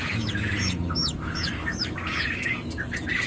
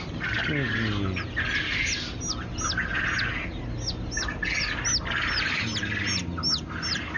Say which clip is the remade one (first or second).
first